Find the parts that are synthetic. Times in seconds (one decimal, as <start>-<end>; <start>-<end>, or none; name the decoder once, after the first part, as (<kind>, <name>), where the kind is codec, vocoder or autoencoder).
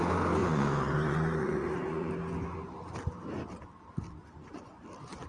0.4-2.1 (vocoder, Vocos); 4.2-4.8